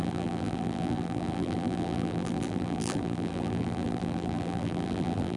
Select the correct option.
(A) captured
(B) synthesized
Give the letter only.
B